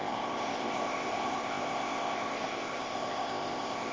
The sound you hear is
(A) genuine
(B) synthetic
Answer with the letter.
B